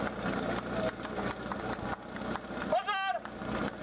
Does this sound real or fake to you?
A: real